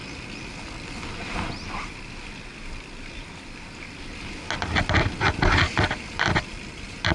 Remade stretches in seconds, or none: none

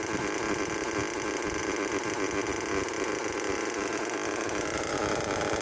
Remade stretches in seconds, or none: none

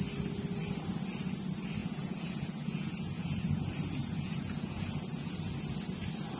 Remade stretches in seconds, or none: 1.8-3.6 (vocoder, Vocos); 4.0-5.5

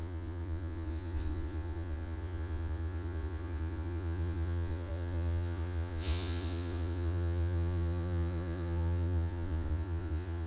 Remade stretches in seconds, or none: 0.0-10.5 (vocoder, Vocos)

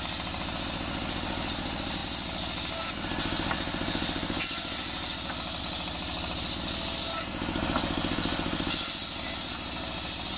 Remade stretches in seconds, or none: none

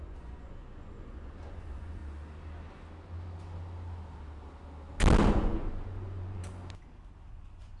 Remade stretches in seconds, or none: 0.0-2.0 (vocoder, Vocos); 5.3-6.4; 7.3-7.8

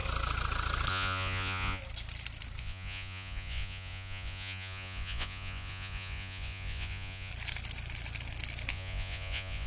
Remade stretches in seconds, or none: 0.9-1.8 (vocoder, Vocos); 2.6-7.3; 8.7-9.7